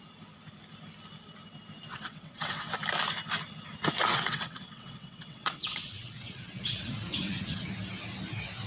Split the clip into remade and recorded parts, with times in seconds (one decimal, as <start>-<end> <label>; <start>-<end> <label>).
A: 0.0-1.9 recorded; 1.9-2.7 remade; 2.7-4.1 recorded; 4.1-7.7 remade; 7.7-8.7 recorded